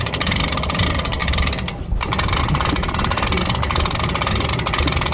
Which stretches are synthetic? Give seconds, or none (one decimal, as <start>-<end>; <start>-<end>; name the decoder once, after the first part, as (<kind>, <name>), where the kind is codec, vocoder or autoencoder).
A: none